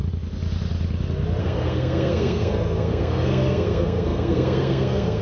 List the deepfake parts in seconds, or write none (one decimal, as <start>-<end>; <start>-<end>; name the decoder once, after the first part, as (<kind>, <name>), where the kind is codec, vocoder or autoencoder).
1.4-5.2 (codec, SNAC)